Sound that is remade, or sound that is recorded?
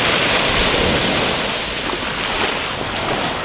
recorded